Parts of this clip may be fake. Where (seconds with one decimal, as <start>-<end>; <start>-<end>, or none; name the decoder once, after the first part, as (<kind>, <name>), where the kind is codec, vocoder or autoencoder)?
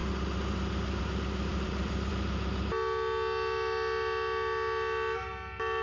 1.5-2.1 (vocoder, BigVGAN v2)